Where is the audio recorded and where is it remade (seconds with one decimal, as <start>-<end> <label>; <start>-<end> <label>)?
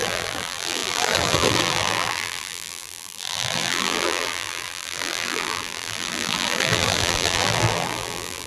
0.0-8.5 remade